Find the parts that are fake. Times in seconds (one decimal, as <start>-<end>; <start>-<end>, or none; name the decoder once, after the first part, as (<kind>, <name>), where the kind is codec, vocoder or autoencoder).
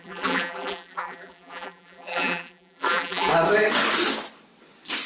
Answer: 0.0-3.3 (vocoder, BigVGAN v2)